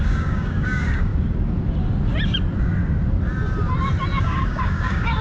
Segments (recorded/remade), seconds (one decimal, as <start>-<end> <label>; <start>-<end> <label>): 0.0-1.1 remade; 1.1-4.2 recorded; 4.2-5.2 remade